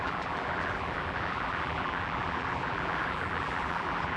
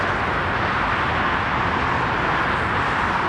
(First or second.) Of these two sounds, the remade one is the first